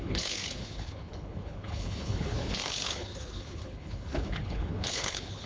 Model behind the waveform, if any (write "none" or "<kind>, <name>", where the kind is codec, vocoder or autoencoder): codec, HILCodec